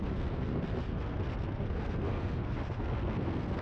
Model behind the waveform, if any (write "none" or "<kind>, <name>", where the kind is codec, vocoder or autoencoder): codec, SNAC